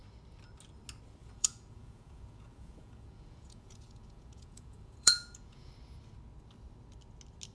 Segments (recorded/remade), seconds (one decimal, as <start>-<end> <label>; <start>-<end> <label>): 0.0-1.2 recorded; 1.2-5.7 remade; 5.7-7.5 recorded